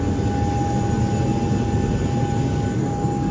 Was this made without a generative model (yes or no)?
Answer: yes